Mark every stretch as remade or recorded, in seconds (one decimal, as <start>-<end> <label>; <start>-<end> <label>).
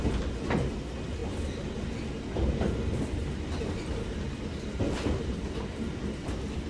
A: 0.0-6.7 recorded